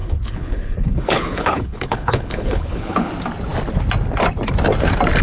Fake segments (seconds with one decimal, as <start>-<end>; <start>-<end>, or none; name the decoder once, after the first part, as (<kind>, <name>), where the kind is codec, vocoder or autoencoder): 0.0-3.1 (codec, HILCodec)

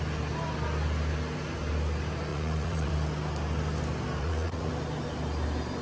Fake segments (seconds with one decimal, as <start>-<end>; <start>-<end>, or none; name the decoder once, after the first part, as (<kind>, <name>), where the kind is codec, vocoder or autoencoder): 2.3-2.9 (vocoder, Vocos); 4.2-4.7

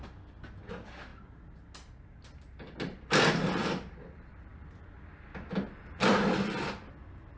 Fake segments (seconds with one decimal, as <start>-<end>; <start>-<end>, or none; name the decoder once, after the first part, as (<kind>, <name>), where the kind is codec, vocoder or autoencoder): 0.0-1.1 (vocoder, BigVGAN v2); 3.3-7.4

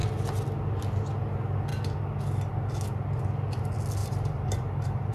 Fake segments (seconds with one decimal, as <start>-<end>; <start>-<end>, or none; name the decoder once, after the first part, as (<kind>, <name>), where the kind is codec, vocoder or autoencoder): 4.0-5.1 (vocoder, BigVGAN v2)

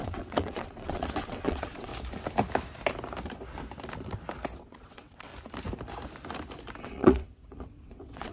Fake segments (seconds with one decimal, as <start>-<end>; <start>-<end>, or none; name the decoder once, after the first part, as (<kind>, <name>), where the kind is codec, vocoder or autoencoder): 0.0-1.9 (vocoder, WaveNeXt); 4.6-5.3; 6.8-8.3